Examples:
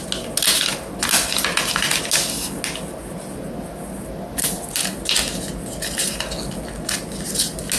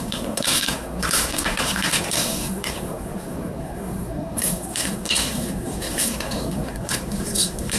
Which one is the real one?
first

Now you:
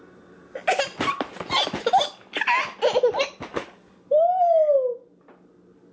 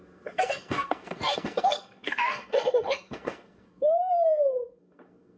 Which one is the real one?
first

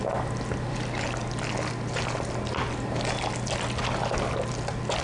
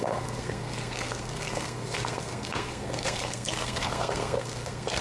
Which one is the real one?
first